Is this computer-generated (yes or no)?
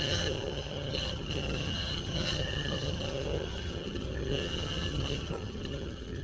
yes